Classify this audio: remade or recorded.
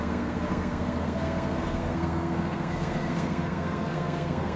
remade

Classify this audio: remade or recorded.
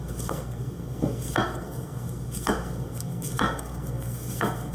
remade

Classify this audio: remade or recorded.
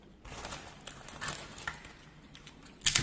recorded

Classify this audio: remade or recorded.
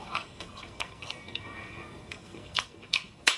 remade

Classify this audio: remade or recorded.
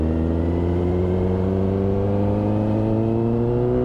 recorded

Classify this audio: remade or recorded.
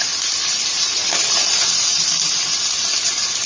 recorded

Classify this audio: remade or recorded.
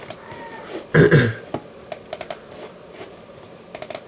recorded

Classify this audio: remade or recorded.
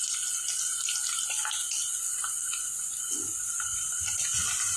recorded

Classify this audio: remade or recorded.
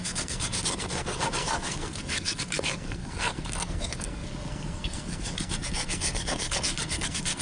remade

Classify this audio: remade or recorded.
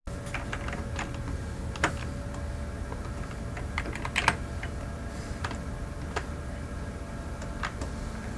recorded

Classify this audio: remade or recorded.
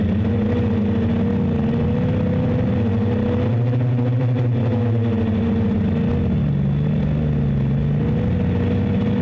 recorded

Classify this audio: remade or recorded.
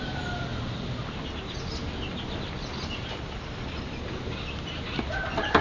recorded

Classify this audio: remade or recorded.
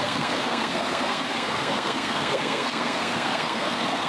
remade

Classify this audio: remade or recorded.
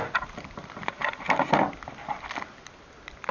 recorded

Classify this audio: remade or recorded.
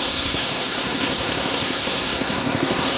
remade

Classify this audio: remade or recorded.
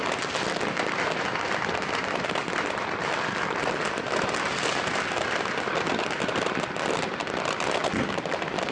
recorded